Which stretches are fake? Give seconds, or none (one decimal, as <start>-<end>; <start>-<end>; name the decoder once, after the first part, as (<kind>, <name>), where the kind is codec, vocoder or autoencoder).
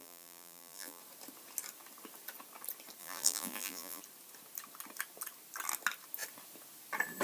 0.0-1.0 (vocoder, BigVGAN v2); 3.0-4.0